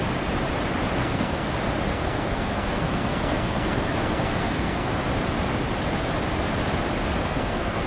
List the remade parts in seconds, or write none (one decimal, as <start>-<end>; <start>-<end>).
1.0-1.5; 1.9-4.9; 7.2-7.9